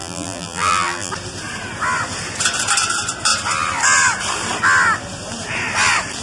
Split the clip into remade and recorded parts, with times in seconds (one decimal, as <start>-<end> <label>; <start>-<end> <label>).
0.0-1.1 remade; 1.1-6.2 recorded